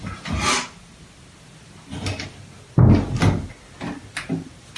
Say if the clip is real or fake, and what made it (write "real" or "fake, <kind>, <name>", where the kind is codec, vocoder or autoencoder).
real